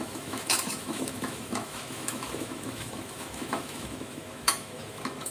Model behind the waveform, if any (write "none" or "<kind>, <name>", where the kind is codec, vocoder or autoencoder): autoencoder, DAC-VAE